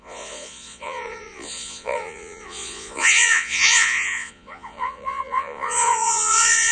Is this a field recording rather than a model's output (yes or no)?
no